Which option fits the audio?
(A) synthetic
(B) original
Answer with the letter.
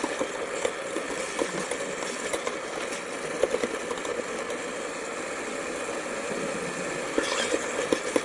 B